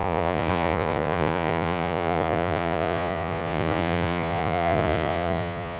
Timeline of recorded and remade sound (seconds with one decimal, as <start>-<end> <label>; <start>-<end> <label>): 0.0-5.8 remade